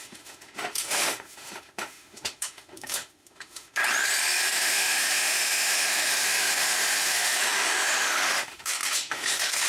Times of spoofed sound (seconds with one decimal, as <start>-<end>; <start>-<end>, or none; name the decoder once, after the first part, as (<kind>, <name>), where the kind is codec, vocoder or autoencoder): 0.0-3.8 (autoencoder, DAC-VAE); 4.5-9.7